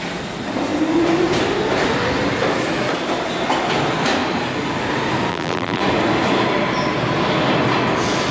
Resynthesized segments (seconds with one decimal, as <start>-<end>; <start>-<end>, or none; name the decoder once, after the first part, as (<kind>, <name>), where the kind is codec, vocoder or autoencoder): 5.3-5.8 (vocoder, BigVGAN v2)